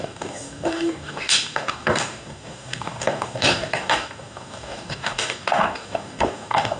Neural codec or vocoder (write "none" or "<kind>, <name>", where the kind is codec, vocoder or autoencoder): codec, DAC